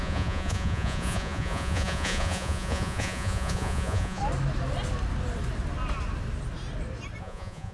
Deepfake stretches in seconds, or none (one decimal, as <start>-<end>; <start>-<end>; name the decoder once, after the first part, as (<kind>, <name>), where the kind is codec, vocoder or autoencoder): 0.0-4.2 (vocoder, Vocos); 7.2-7.7